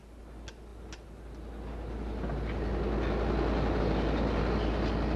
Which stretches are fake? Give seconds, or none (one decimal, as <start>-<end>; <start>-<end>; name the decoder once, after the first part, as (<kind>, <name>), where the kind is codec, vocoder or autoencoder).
none